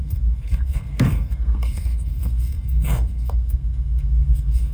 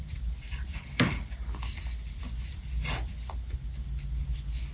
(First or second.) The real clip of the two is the second